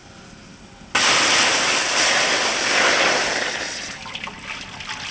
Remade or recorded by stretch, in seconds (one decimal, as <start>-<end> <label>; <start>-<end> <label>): 0.0-5.1 recorded